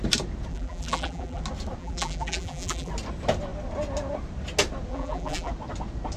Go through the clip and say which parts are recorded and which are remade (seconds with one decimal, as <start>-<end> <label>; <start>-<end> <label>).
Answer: 0.0-0.5 recorded; 0.5-1.4 remade; 1.4-1.8 recorded; 1.8-2.9 remade; 2.9-4.9 recorded; 4.9-5.5 remade; 5.5-6.2 recorded